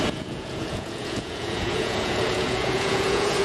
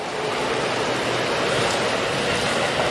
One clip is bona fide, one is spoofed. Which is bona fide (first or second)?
second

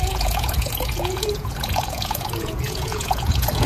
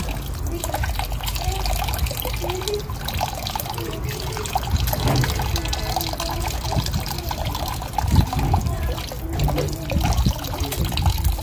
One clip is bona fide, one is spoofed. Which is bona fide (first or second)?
second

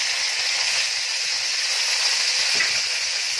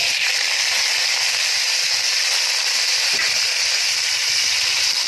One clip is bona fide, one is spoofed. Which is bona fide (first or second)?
second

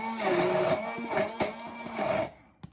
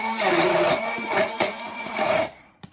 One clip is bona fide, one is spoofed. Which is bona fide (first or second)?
first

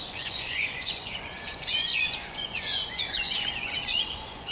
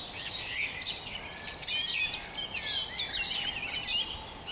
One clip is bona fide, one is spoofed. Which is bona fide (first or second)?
second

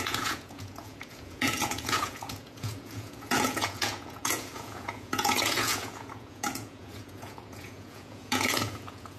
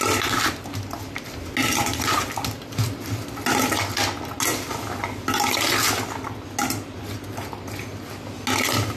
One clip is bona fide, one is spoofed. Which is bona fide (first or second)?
second